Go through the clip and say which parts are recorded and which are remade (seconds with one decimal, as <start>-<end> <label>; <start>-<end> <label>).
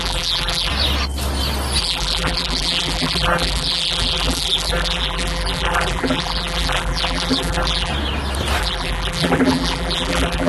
0.0-0.7 remade; 0.7-1.8 recorded; 1.8-7.9 remade; 7.9-8.6 recorded; 8.6-10.5 remade